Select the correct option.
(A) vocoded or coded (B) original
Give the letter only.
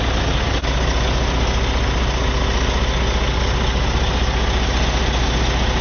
B